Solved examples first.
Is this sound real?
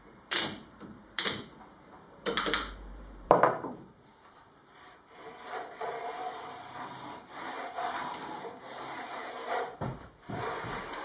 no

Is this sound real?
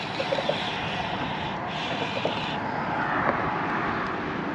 yes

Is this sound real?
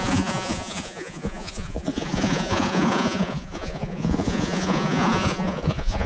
no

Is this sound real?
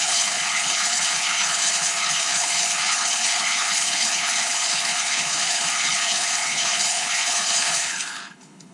no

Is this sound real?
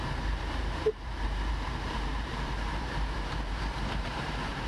no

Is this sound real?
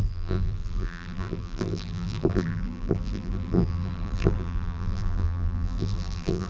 no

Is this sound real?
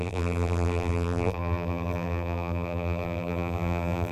no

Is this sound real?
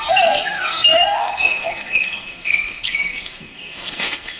no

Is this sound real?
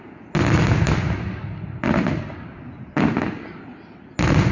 yes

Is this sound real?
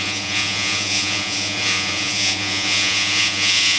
no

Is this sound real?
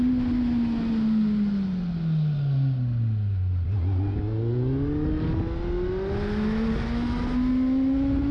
yes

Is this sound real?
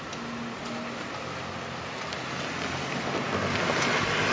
yes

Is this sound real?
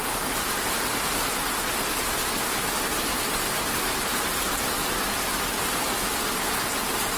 yes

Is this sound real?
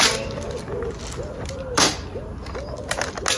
yes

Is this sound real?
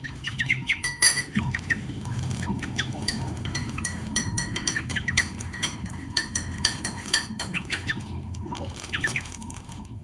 no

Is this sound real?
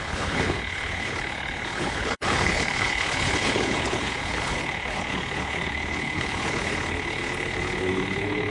no